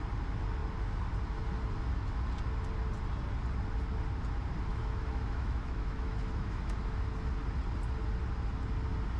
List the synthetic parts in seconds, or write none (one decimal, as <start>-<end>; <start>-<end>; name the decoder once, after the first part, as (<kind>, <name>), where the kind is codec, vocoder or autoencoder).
4.7-6.8 (autoencoder, DAC-VAE)